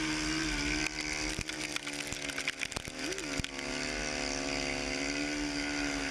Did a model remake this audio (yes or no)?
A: no